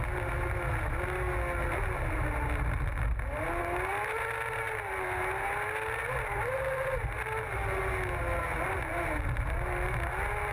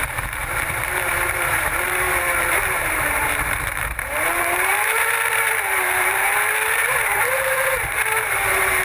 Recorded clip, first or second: first